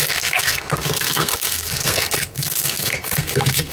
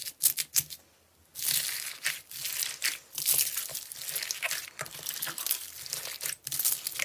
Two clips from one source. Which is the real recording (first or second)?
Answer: second